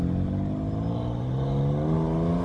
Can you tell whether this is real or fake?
real